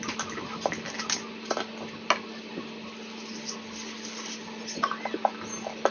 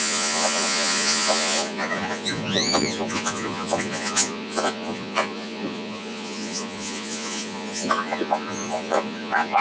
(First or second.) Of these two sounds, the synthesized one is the second